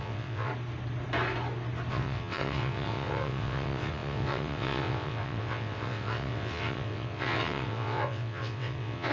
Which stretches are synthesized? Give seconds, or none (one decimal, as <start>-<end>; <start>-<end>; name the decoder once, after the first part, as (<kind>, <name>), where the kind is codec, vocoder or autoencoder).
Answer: 0.0-0.5 (vocoder, WaveNeXt); 1.9-9.1